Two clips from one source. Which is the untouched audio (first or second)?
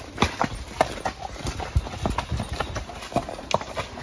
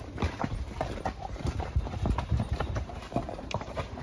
first